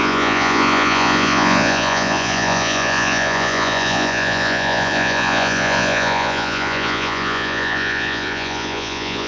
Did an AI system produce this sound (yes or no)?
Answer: yes